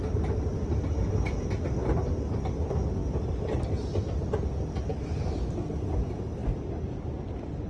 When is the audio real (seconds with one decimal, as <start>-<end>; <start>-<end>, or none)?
0.0-7.7